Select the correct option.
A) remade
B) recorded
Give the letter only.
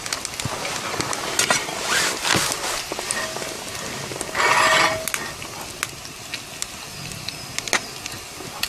B